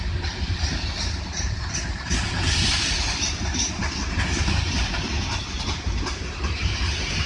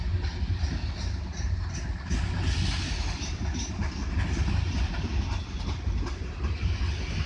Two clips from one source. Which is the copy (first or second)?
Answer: first